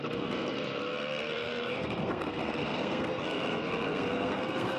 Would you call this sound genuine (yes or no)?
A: no